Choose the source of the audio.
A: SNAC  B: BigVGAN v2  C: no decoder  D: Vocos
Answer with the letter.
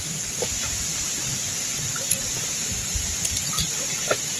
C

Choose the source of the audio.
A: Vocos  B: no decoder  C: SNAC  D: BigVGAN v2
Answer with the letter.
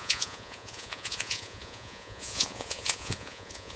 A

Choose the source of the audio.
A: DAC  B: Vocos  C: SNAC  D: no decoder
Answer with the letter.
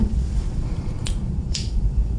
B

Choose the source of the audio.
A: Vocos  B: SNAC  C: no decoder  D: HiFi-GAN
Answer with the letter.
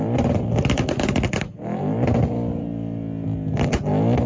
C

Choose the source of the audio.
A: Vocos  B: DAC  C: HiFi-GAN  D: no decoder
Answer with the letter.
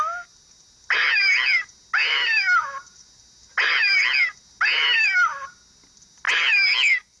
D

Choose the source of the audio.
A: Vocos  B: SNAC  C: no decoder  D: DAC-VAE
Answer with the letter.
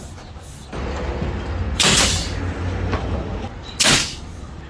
C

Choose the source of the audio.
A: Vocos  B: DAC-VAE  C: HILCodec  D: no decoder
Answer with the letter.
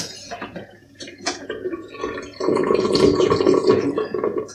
A